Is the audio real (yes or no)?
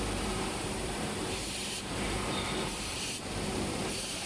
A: no